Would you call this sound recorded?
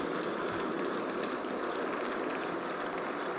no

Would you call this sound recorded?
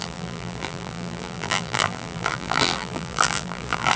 no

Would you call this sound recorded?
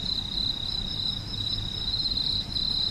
yes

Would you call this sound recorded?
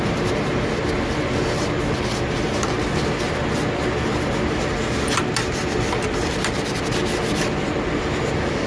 yes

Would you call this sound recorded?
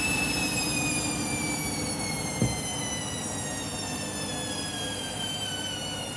yes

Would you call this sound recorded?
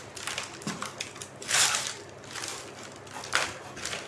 yes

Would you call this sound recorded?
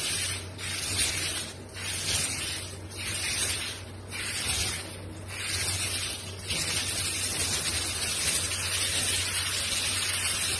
yes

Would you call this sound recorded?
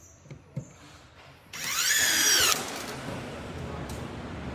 no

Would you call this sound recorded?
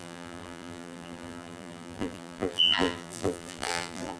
no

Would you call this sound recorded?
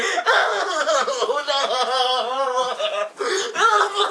no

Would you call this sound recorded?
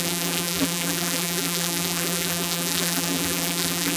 no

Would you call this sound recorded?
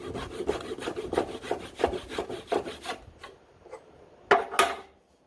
yes